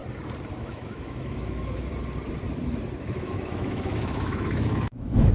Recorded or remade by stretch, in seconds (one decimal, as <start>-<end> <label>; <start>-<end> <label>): 0.0-0.5 recorded; 0.5-1.9 remade; 1.9-3.0 recorded; 3.0-5.3 remade